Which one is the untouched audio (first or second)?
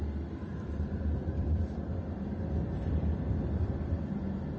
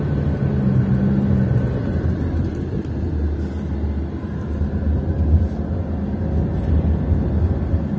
second